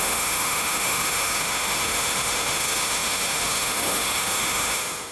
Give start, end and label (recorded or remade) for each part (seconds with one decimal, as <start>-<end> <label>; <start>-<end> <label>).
0.0-5.1 remade